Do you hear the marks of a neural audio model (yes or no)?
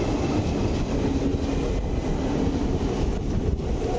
no